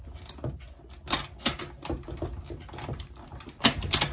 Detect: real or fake real